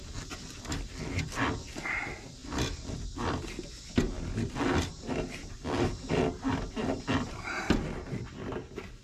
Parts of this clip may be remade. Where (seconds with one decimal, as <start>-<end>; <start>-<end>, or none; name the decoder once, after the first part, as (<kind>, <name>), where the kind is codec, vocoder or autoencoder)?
none